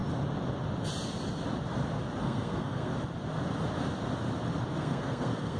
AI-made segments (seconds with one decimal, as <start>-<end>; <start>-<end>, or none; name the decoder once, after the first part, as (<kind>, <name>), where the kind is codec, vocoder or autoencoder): 2.2-2.9 (codec, SNAC); 4.8-5.6